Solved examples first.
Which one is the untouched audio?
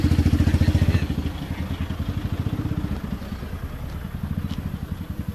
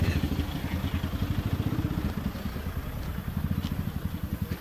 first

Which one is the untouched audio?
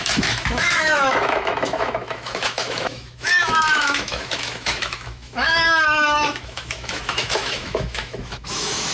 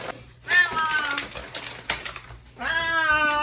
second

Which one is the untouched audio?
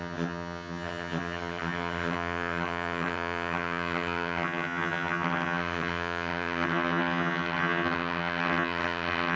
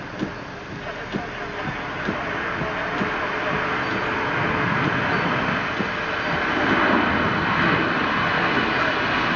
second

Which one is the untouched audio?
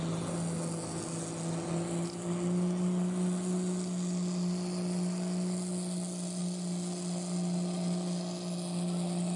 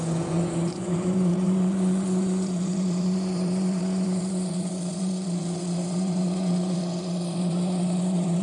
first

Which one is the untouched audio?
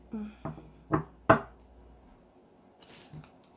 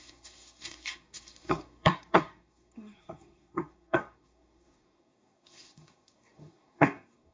first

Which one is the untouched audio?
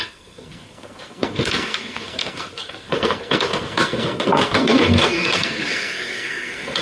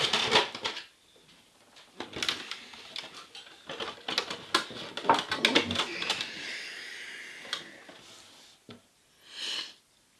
second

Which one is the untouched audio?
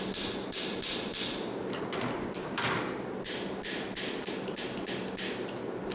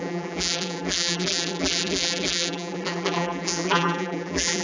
first